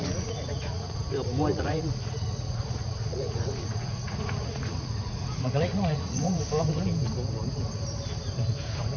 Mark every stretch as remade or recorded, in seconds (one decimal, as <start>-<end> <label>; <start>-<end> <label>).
0.0-1.1 remade; 1.1-1.5 recorded; 1.5-6.4 remade; 6.4-9.0 recorded